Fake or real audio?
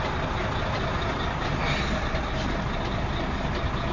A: real